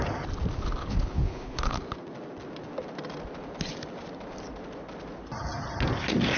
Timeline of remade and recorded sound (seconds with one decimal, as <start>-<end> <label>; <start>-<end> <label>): 0.0-0.8 recorded; 0.8-1.8 remade; 1.8-6.4 recorded